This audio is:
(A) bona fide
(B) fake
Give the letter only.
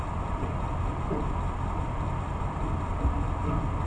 A